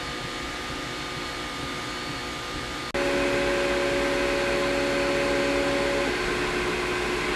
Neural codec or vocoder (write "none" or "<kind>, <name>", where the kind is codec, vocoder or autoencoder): none